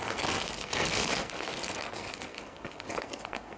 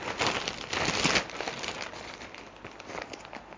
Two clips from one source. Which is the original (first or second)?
second